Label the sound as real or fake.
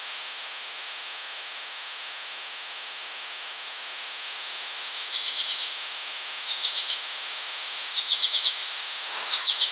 fake